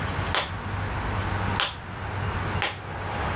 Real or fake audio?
real